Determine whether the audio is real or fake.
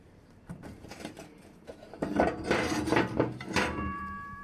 fake